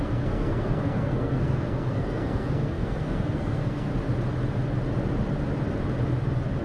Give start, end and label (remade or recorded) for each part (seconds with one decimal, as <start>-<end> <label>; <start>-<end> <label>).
0.0-3.9 remade; 3.9-6.6 recorded